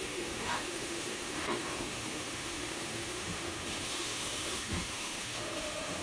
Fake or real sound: fake